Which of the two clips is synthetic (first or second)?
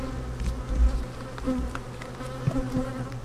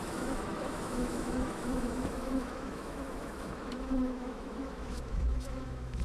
second